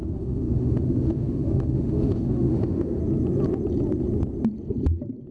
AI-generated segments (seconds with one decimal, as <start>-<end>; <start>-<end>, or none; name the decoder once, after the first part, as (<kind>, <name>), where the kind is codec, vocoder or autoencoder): 0.0-3.0 (autoencoder, DAC-VAE)

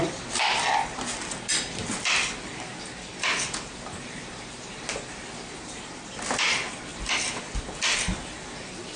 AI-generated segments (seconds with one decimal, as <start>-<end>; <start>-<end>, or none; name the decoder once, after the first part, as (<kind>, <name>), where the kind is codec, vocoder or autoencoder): none